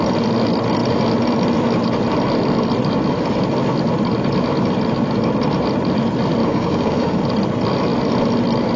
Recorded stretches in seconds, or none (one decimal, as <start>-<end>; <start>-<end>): 0.0-6.4; 7.2-8.8